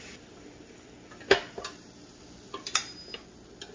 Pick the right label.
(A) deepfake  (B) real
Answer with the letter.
B